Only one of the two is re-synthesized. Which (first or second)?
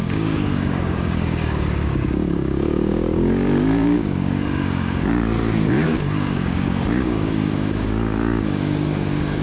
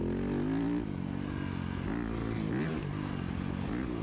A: first